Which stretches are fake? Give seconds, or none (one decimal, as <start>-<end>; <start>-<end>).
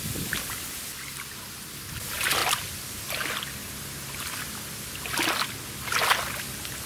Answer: none